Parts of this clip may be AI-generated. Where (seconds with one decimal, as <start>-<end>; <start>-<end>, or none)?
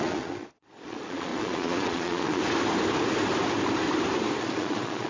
0.0-2.4; 4.4-5.1